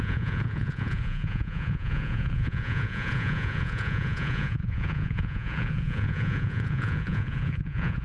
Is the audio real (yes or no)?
no